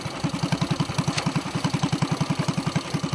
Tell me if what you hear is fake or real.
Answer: real